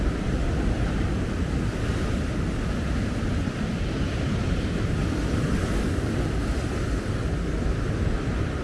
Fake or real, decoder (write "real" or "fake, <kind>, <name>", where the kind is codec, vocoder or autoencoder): real